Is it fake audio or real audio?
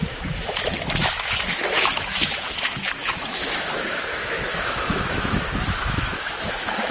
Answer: fake